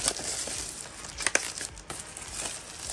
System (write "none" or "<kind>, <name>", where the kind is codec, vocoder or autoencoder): none